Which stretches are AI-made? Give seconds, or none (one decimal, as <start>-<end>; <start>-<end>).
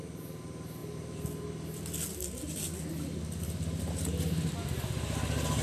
none